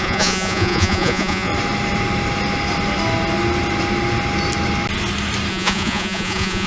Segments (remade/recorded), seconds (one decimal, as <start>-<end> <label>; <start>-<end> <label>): 0.0-1.5 remade; 1.5-5.5 recorded; 5.5-6.7 remade